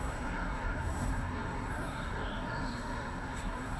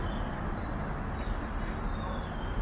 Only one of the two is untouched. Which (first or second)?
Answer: second